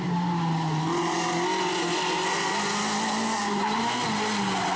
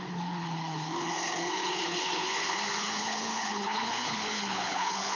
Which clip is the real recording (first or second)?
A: first